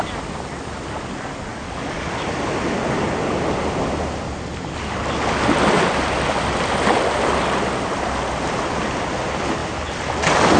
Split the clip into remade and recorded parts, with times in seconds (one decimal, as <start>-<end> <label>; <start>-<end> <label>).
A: 0.0-1.5 recorded; 1.5-2.1 remade; 2.1-10.6 recorded